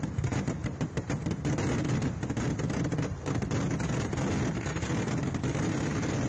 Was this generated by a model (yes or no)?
no